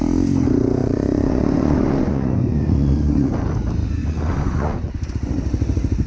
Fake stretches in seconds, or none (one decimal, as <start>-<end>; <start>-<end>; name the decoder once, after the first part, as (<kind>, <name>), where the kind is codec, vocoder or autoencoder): 0.8-3.3 (vocoder, Vocos); 4.0-5.1